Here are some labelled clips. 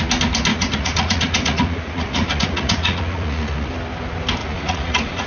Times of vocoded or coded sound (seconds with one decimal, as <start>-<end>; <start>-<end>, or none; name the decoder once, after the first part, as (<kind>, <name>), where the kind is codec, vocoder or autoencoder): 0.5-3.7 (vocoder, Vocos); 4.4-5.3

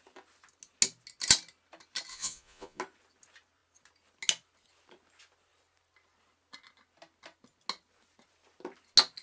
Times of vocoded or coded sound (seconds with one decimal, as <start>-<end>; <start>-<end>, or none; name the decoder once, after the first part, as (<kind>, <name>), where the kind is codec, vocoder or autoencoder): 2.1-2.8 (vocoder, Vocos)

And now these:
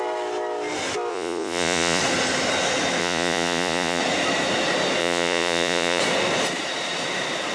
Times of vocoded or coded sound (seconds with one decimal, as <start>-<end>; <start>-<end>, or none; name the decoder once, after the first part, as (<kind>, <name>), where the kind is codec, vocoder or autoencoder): 1.1-2.0 (vocoder, Vocos); 3.0-4.0; 5.0-6.0

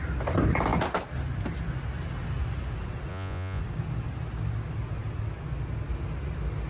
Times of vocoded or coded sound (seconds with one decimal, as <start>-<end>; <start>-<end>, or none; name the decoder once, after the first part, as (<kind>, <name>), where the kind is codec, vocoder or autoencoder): 3.1-3.6 (vocoder, Vocos)

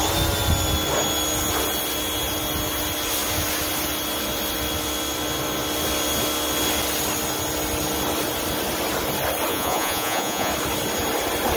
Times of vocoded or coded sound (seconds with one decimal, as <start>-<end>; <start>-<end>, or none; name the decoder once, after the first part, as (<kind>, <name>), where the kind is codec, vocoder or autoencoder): 9.5-10.5 (vocoder, Vocos)

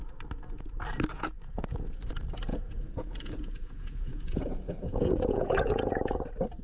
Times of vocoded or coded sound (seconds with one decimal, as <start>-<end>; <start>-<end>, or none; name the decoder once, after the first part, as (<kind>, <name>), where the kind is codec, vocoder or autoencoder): 1.1-2.1 (vocoder, Vocos); 2.5-5.9

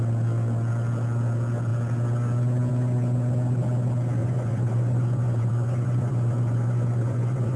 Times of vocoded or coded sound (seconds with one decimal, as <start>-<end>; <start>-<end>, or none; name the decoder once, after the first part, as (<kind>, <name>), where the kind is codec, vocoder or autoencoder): 4.2-7.6 (vocoder, Vocos)